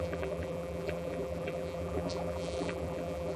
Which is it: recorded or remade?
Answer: remade